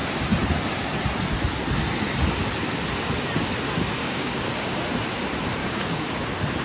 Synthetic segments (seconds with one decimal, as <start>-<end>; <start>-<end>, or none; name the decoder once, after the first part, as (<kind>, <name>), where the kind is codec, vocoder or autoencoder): 4.0-4.8 (codec, DAC); 5.6-6.1